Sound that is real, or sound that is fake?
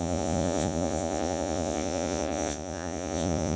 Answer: fake